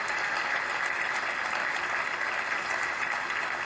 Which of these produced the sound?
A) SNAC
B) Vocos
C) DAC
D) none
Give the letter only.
D